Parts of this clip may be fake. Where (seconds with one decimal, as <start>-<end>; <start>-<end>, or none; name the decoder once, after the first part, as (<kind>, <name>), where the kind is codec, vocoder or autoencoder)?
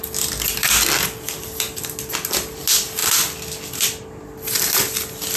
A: none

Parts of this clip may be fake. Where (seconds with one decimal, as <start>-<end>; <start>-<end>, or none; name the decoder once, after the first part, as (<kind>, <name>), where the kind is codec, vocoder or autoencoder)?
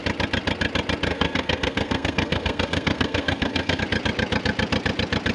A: 1.1-3.8 (codec, SNAC)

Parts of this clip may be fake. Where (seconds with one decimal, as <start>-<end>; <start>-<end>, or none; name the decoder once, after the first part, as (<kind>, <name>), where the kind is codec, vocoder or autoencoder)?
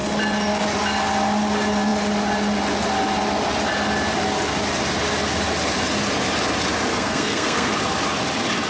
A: 6.9-7.7 (codec, SNAC)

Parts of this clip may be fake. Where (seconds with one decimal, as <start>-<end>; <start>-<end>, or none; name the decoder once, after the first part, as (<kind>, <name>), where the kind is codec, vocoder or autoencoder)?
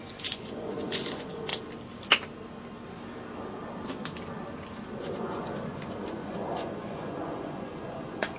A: 0.0-1.5 (vocoder, Vocos); 4.9-8.4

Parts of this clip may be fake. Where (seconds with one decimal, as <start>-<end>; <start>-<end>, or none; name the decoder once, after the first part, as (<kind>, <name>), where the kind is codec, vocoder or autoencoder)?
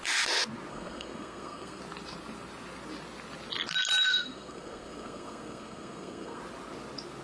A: 0.7-1.8 (codec, SNAC); 4.1-6.4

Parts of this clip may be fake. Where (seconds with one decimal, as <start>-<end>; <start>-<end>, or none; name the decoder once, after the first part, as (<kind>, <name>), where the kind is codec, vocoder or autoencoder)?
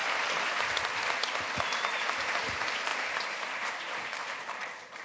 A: 2.0-5.0 (vocoder, BigVGAN v2)